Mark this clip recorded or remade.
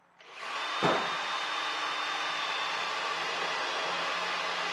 recorded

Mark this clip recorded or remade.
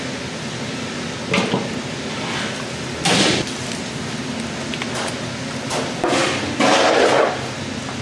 recorded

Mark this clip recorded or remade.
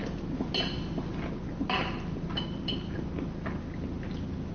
recorded